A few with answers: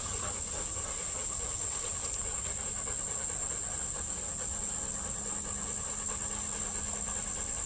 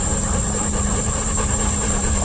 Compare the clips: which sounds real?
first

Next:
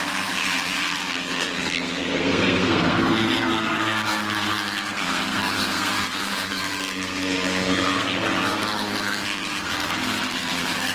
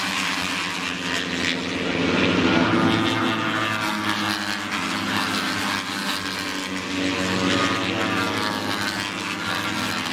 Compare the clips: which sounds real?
second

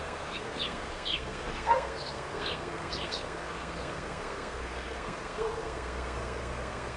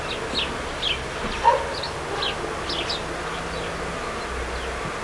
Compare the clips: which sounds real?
second